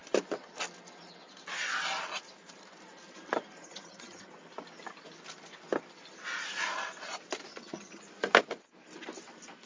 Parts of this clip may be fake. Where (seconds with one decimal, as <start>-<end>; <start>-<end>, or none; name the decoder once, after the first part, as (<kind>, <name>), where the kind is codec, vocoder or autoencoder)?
3.6-4.3 (vocoder, HiFi-GAN); 7.5-8.0